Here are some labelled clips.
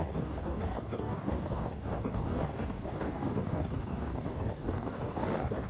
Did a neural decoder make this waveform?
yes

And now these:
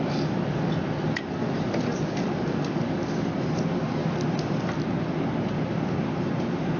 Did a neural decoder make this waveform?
no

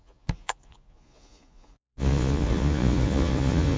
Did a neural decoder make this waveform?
yes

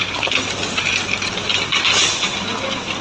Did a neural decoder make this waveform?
no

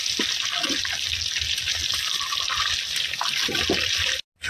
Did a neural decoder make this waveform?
no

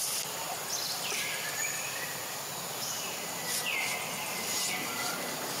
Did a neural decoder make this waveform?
no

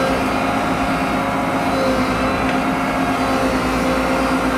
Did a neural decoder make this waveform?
no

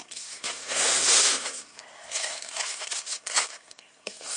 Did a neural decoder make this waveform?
yes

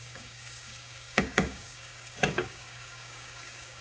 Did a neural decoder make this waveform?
yes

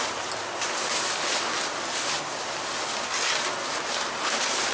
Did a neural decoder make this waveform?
no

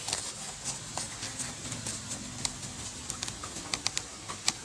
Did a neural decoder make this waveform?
no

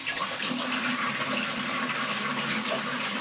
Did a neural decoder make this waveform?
no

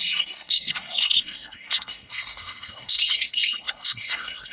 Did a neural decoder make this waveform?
yes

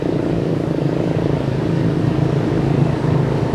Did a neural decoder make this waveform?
yes